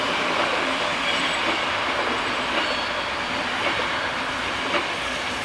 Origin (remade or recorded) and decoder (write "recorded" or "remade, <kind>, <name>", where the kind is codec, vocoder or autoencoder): remade, vocoder, BigVGAN v2